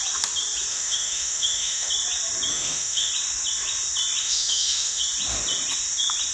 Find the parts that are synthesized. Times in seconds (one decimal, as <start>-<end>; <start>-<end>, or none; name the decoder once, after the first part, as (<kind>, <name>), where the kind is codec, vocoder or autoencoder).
0.7-1.9 (autoencoder, DAC-VAE); 2.5-3.1; 4.2-5.0